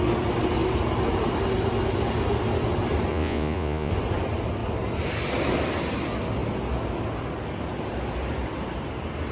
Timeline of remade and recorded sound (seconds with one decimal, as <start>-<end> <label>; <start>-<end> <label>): 0.0-3.1 recorded; 3.1-3.9 remade; 3.9-9.3 recorded